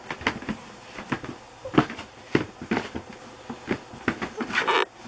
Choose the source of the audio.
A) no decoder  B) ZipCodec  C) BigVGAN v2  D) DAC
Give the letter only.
A